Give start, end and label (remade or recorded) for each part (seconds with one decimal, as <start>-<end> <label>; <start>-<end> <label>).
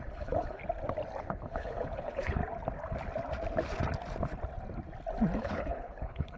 0.0-0.6 remade; 0.6-1.2 recorded; 1.2-2.4 remade; 2.4-5.4 recorded; 5.4-6.4 remade